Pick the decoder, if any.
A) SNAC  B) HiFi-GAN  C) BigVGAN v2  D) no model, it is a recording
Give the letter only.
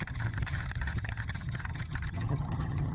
B